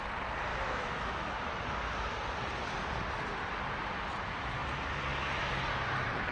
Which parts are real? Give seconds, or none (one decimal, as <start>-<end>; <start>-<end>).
0.0-0.5; 1.3-6.3